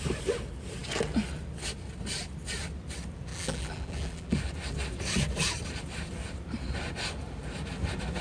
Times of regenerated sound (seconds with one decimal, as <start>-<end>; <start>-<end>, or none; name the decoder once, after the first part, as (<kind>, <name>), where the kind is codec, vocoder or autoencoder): 3.3-4.4 (vocoder, BigVGAN v2)